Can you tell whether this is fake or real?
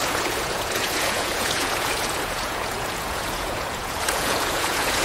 fake